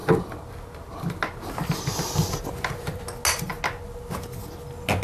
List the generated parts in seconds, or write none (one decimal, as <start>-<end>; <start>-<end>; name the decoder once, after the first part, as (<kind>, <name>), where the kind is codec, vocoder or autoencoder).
none